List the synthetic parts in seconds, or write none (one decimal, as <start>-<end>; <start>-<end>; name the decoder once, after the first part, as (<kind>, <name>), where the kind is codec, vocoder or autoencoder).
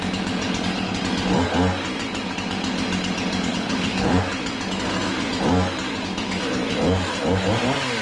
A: 3.5-4.2 (codec, HILCodec)